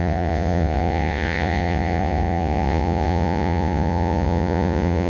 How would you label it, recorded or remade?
remade